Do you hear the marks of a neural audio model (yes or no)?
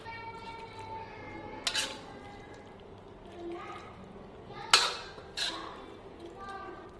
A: no